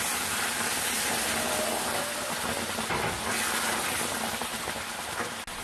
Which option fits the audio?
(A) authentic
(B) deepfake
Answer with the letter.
A